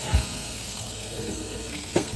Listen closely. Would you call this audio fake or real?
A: fake